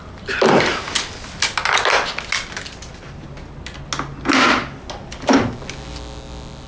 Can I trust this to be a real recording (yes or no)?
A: yes